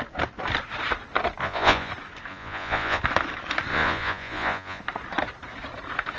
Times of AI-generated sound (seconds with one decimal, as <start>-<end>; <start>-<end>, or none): 1.4-1.9; 2.3-3.0; 3.7-4.8